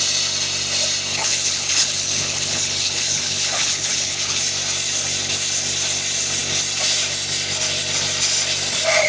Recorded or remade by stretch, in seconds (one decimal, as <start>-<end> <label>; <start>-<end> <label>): 0.0-1.1 recorded; 1.1-4.4 remade; 4.4-9.1 recorded